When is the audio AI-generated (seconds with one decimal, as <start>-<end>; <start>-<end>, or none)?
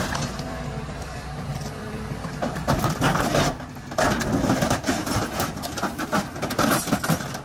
0.0-7.4